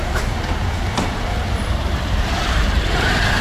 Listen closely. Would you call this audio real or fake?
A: fake